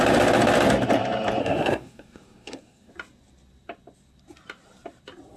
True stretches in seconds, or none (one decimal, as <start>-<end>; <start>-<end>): 0.0-1.4; 2.9-5.4